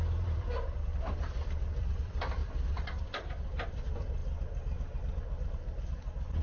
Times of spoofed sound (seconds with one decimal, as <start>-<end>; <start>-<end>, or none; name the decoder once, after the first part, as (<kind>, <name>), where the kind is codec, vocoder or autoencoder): 0.0-4.2 (vocoder, BigVGAN v2)